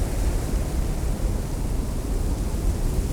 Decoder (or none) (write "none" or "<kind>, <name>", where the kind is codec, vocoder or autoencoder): none